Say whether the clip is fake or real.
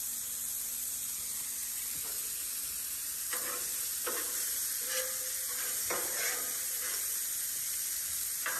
real